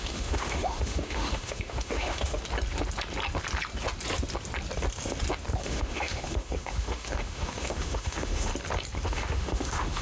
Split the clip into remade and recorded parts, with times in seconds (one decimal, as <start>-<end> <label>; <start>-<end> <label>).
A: 0.0-2.4 remade; 2.4-5.6 recorded; 5.6-8.5 remade; 8.5-9.1 recorded; 9.1-10.0 remade